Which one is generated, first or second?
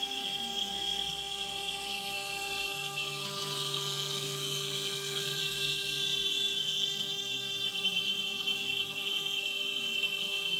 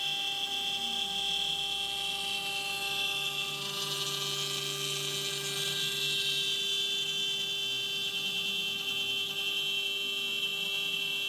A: first